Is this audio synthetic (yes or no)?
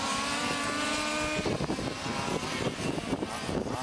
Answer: no